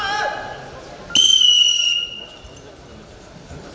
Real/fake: real